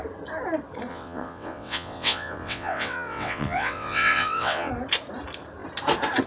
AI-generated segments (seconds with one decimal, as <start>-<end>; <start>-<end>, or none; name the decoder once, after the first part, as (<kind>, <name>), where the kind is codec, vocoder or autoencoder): 0.9-4.7 (vocoder, WaveNeXt)